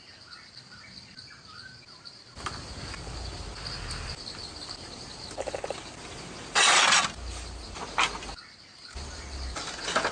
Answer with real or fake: real